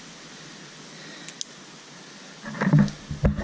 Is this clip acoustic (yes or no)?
yes